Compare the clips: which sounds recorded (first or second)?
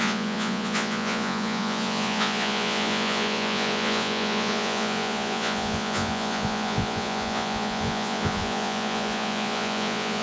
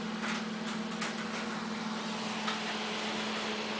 second